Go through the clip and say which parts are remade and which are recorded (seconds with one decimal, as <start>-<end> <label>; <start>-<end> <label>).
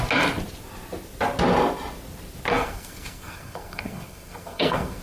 0.0-2.5 recorded; 2.5-5.0 remade